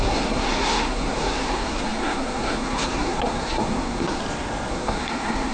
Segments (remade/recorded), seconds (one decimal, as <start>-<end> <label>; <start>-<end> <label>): 0.0-4.2 remade; 4.2-4.7 recorded; 4.7-5.5 remade